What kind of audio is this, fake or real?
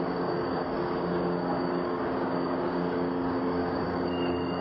fake